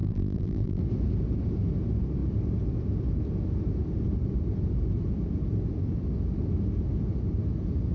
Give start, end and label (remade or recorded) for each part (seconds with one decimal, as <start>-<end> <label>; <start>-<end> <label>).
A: 0.0-0.8 remade; 0.8-7.9 recorded